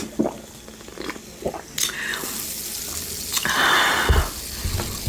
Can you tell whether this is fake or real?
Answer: real